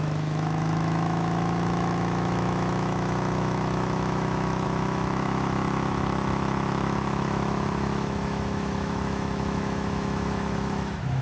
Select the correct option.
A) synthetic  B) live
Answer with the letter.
A